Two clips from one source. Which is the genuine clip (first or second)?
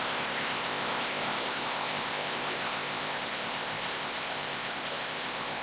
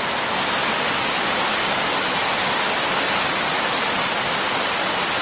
second